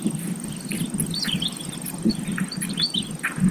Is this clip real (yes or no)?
yes